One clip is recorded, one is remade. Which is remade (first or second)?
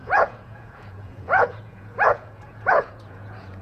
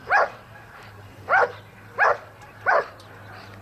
first